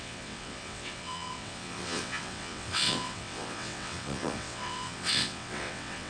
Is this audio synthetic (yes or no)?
yes